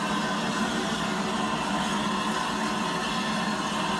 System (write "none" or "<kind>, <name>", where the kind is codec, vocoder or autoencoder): none